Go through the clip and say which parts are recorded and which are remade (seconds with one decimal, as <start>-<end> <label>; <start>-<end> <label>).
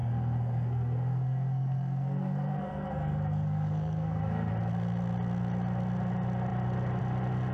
0.0-4.5 remade; 4.5-7.5 recorded